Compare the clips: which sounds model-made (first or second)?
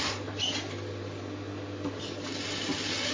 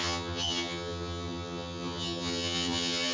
second